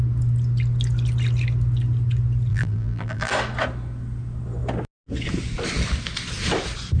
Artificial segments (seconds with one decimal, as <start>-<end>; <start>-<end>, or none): 2.5-3.3